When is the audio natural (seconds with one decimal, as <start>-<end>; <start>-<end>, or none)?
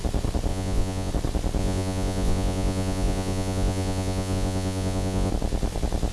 0.0-0.5; 1.1-1.6; 5.3-6.1